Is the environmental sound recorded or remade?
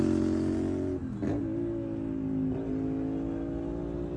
recorded